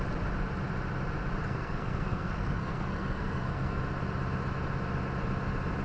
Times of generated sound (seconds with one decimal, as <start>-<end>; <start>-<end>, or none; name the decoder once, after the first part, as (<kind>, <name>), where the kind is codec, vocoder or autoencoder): 1.4-3.8 (codec, SNAC)